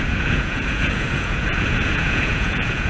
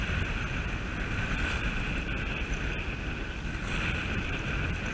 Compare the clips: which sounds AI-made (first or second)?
first